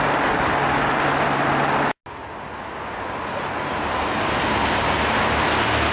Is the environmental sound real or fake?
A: real